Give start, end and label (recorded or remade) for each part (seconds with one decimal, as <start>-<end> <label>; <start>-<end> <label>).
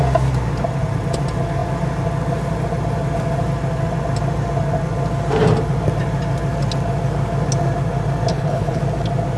0.0-8.3 recorded; 8.3-8.8 remade; 8.8-9.4 recorded